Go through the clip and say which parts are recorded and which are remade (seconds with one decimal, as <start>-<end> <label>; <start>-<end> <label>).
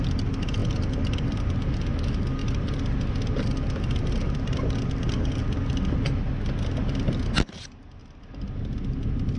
0.0-0.6 recorded; 0.6-1.4 remade; 1.4-2.4 recorded; 2.4-4.9 remade; 4.9-5.4 recorded; 5.4-6.2 remade; 6.2-8.0 recorded; 8.0-9.0 remade; 9.0-9.4 recorded